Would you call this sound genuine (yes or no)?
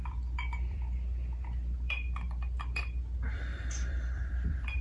no